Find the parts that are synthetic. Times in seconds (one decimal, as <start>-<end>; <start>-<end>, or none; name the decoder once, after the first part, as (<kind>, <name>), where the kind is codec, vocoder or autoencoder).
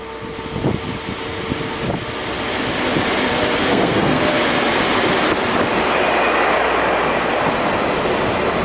3.7-4.2 (codec, SNAC)